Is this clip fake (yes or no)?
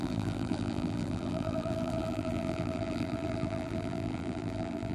yes